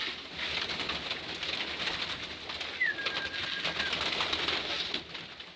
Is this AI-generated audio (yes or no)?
no